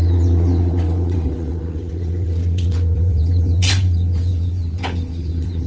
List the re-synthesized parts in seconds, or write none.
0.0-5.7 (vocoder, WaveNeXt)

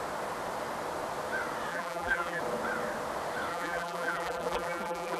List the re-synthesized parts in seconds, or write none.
1.7-2.4 (vocoder, BigVGAN v2); 3.5-5.2

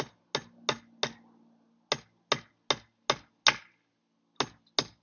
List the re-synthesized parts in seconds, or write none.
none

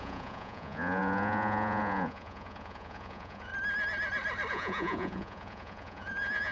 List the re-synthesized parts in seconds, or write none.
0.0-3.5 (vocoder, Vocos); 4.5-6.5

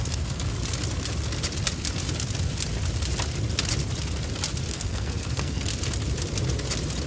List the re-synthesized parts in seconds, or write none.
0.0-0.4 (codec, SNAC); 4.7-5.7

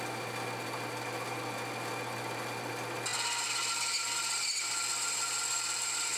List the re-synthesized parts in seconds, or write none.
none

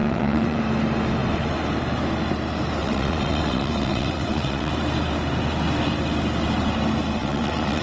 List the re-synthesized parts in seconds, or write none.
0.0-0.6 (vocoder, WaveNeXt); 2.8-4.7; 7.2-7.8

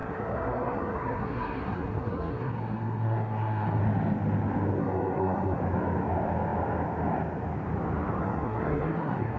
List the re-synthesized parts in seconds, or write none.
0.0-3.8 (codec, SNAC); 4.8-5.6; 8.2-9.4